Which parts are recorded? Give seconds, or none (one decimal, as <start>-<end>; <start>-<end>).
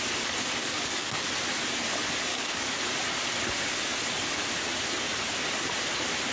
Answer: 0.0-0.6; 1.3-2.3; 2.8-6.3